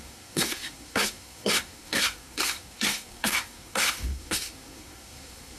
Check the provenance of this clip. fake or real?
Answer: fake